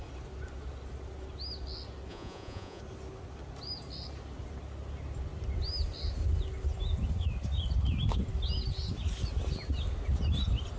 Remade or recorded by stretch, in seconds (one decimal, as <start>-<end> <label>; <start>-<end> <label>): 0.0-2.1 recorded; 2.1-2.8 remade; 2.8-10.8 recorded